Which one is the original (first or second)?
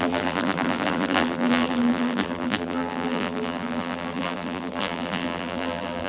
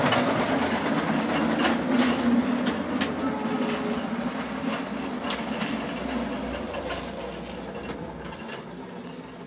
second